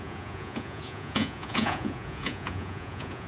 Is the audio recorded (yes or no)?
no